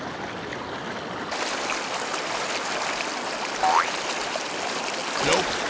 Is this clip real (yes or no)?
yes